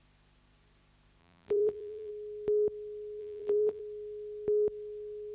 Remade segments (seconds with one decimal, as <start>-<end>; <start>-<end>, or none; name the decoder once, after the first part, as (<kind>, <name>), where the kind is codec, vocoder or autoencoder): 1.2-2.1 (vocoder, BigVGAN v2); 3.2-3.8